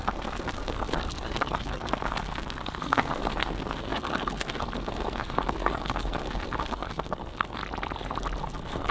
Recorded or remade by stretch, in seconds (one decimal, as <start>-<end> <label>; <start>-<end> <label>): 0.0-7.6 remade; 7.6-8.4 recorded; 8.4-8.9 remade